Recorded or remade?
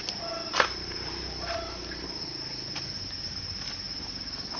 recorded